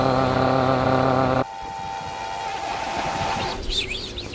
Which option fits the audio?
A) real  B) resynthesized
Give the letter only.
A